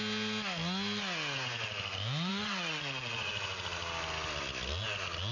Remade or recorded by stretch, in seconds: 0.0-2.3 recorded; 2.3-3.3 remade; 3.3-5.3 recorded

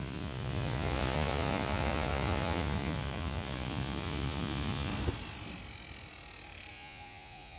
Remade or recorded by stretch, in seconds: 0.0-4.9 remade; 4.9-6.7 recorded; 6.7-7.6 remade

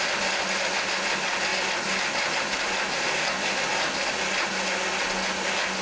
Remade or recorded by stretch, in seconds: 0.0-5.8 recorded

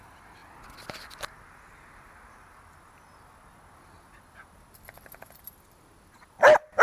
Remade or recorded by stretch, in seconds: 0.0-6.8 recorded

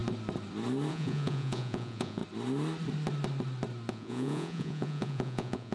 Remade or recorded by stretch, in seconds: 0.0-0.9 recorded; 0.9-2.2 remade; 2.2-3.9 recorded; 3.9-5.7 remade

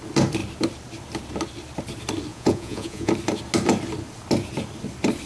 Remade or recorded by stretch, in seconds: 0.0-2.3 recorded; 2.3-3.1 remade; 3.1-5.3 recorded

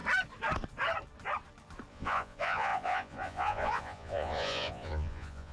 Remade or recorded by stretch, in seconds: 0.0-1.9 recorded; 1.9-5.5 remade